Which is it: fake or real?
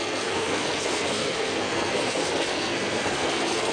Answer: fake